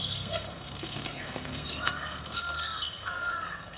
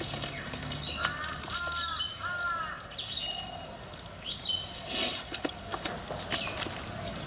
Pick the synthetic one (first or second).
first